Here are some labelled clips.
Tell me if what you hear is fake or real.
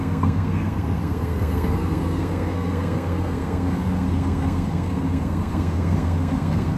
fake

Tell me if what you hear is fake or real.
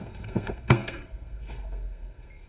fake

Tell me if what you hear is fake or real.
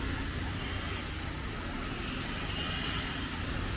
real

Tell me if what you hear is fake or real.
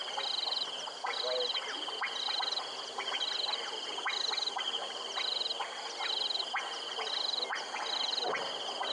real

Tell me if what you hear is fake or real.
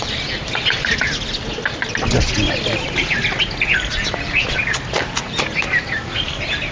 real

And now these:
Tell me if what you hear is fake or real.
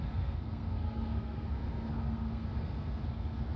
fake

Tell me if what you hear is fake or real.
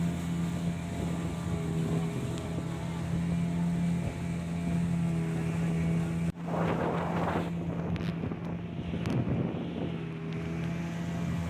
real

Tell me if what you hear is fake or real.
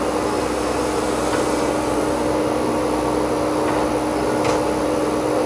real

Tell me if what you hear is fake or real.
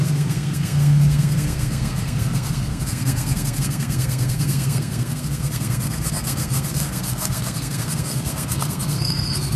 fake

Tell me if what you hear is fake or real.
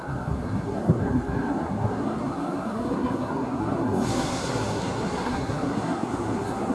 fake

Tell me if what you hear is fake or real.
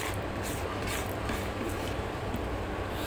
real